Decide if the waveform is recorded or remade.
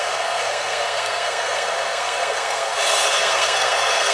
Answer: remade